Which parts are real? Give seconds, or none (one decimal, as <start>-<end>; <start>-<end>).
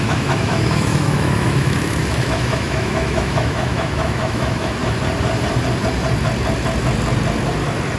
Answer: 4.8-8.0